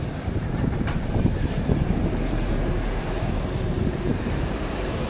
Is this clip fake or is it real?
fake